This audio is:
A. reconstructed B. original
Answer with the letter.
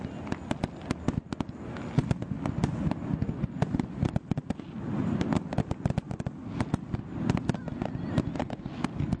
B